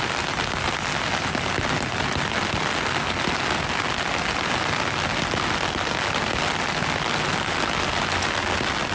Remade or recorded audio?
recorded